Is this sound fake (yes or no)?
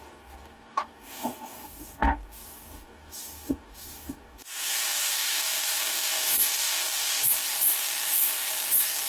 yes